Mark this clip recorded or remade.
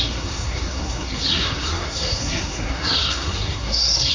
remade